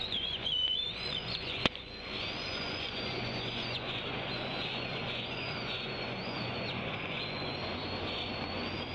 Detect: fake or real fake